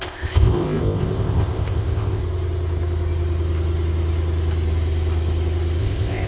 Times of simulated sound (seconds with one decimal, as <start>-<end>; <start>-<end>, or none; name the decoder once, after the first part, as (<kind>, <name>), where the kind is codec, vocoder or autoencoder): 0.0-2.2 (codec, ZipCodec); 5.8-6.3